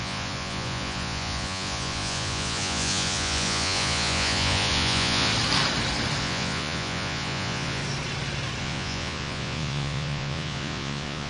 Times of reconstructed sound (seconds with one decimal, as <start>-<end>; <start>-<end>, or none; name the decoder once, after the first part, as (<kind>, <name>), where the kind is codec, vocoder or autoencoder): 0.0-5.3 (vocoder, Vocos); 6.2-7.8; 8.6-11.3

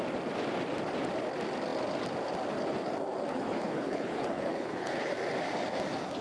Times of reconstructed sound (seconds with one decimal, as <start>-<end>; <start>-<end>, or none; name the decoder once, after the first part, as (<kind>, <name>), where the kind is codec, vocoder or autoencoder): 3.3-5.1 (codec, HILCodec)

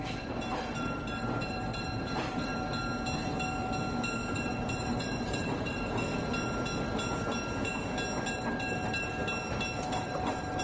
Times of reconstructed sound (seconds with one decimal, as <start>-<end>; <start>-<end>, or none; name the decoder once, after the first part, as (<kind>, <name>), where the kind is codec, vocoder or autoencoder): 0.0-2.5 (vocoder, BigVGAN v2); 4.3-6.1; 8.2-9.2; 9.9-10.6

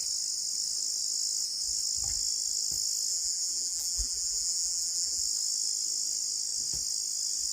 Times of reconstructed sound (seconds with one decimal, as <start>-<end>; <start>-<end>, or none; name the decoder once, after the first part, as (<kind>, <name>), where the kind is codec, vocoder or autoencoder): 3.1-5.2 (vocoder, BigVGAN v2)

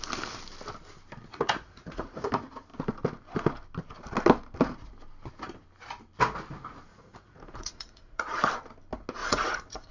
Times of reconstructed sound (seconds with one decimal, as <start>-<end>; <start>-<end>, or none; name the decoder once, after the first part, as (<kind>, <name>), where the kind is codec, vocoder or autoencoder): 1.3-2.3 (vocoder, Vocos); 6.9-8.5; 9.2-9.9

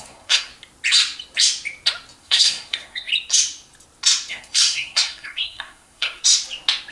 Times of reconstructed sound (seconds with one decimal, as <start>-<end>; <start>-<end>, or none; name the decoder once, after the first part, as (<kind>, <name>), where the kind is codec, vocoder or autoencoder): 0.0-0.5 (codec, SNAC); 2.2-3.1; 4.3-6.2

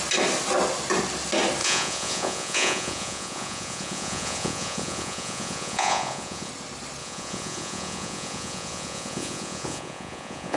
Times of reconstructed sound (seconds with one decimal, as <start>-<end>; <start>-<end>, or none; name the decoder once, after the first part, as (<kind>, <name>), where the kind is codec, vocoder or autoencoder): 1.6-6.5 (vocoder, Vocos); 7.0-10.6